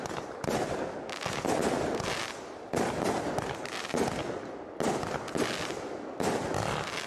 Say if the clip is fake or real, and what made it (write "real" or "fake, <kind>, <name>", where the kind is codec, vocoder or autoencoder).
real